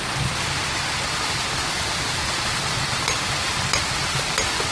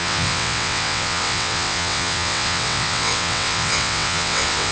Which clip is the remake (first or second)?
second